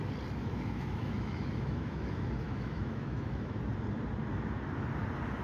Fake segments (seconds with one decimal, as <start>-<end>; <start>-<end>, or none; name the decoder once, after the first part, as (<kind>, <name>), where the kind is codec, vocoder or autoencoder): 0.4-3.6 (autoencoder, DAC-VAE)